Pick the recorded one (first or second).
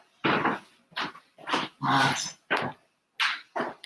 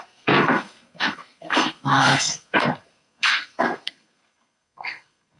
first